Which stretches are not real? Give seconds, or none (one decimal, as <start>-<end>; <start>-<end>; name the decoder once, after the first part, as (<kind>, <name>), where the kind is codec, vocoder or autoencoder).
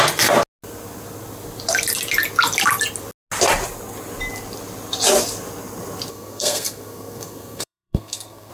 6.1-8.5 (codec, SNAC)